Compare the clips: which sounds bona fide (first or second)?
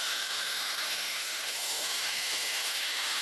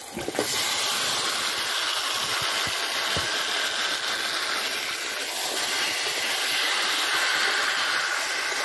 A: second